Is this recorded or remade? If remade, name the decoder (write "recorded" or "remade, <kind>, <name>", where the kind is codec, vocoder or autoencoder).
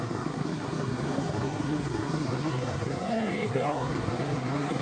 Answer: remade, codec, SNAC